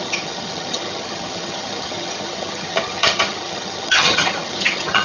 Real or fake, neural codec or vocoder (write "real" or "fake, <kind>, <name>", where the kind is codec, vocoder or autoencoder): fake, vocoder, HiFi-GAN